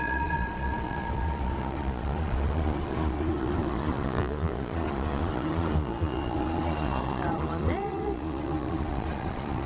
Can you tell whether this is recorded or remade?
remade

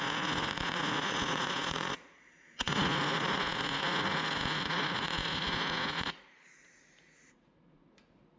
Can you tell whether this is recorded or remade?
remade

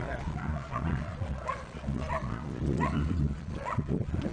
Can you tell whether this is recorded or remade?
remade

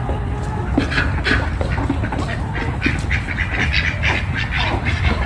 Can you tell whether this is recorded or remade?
recorded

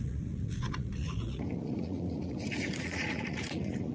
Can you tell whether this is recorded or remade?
remade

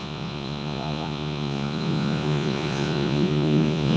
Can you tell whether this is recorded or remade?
remade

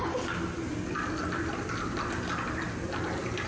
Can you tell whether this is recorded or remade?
recorded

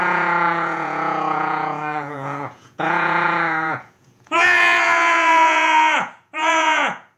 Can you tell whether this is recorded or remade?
remade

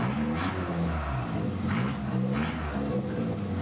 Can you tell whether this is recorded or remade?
recorded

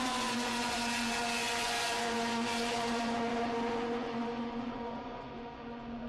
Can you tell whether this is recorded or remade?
remade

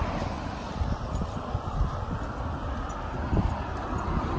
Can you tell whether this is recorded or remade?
recorded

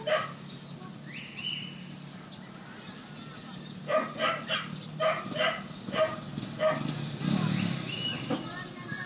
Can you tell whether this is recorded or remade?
recorded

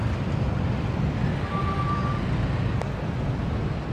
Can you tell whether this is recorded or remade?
recorded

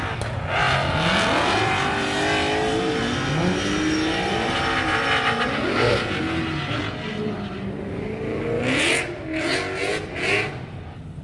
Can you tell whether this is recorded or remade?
recorded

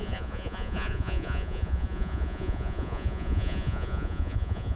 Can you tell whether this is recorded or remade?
remade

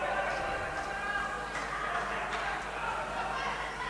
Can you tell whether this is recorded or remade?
recorded